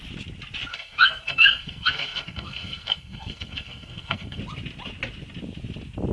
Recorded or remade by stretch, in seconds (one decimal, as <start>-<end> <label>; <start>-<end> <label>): 0.0-0.7 recorded; 0.7-4.4 remade; 4.4-6.1 recorded